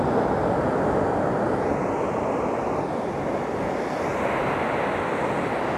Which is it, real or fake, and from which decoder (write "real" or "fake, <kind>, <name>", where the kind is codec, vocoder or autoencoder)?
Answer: real